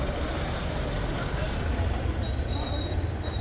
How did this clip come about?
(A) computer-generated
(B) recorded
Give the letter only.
B